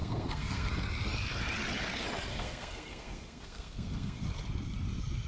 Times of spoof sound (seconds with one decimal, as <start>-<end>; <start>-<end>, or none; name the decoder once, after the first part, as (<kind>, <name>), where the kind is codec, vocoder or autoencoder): 0.0-0.7 (codec, SNAC); 2.3-4.2